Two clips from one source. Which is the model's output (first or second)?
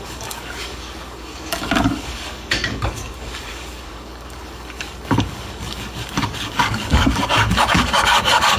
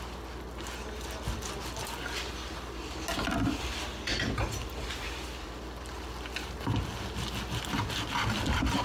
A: first